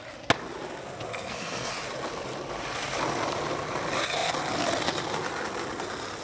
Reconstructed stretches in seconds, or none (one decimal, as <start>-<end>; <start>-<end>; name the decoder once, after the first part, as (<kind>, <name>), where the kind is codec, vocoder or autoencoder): 1.1-1.7 (codec, SNAC)